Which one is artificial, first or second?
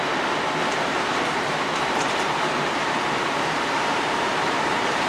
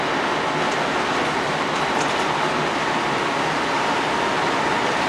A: first